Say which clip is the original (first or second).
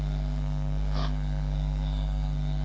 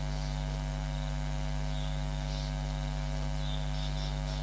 second